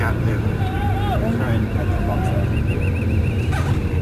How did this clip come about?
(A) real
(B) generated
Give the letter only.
A